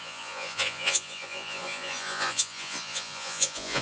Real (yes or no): no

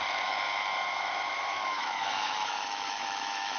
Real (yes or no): no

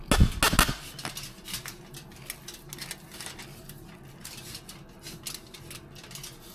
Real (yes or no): yes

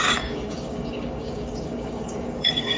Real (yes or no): no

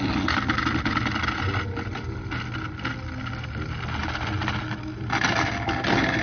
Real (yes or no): yes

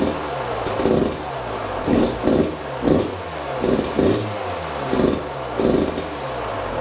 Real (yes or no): yes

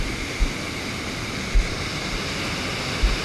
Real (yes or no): yes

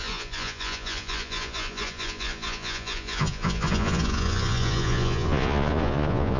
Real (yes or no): no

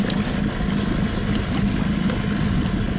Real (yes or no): yes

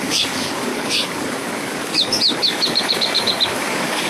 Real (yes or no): no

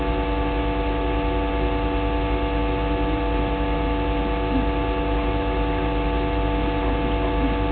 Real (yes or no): yes